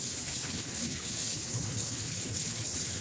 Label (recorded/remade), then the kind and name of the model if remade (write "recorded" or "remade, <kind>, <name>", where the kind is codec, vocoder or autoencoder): remade, codec, HILCodec